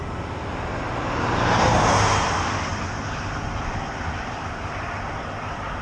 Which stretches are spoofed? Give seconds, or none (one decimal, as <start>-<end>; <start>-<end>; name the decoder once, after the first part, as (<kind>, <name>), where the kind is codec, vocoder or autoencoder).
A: 2.7-5.8 (vocoder, BigVGAN v2)